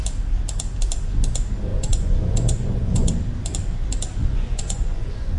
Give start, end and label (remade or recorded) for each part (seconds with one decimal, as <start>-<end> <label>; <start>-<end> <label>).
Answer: 0.0-1.7 recorded; 1.7-3.1 remade; 3.1-4.2 recorded; 4.2-5.4 remade